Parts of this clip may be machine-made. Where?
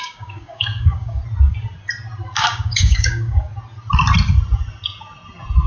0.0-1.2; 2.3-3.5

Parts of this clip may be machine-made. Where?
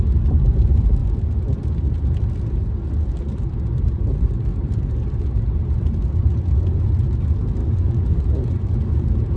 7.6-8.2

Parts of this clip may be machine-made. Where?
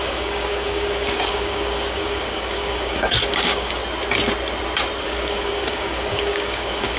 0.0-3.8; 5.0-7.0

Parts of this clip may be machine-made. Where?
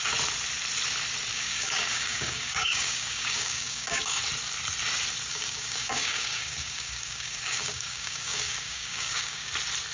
1.3-4.2; 5.3-9.5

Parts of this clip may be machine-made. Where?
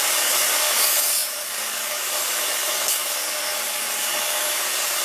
0.0-5.0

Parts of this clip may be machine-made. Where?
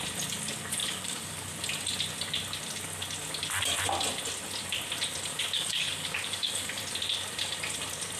0.8-1.5; 5.3-6.8